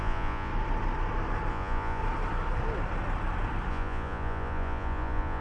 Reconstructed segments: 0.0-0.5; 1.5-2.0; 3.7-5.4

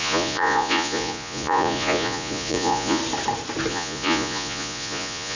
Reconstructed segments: 0.0-3.0; 3.7-5.3

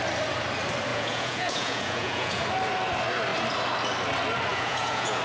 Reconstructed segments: 0.9-2.4; 4.5-5.2

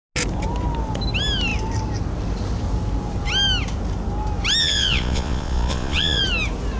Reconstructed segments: 4.6-6.2

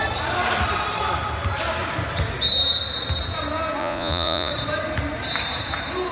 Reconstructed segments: 3.8-4.5

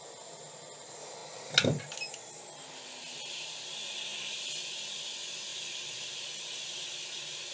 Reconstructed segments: none

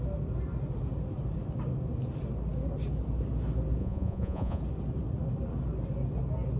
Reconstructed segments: 3.8-4.6

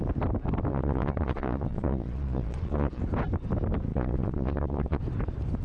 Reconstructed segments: 0.7-3.0; 3.9-5.0